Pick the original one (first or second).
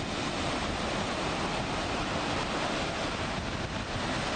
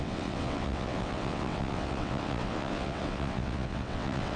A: first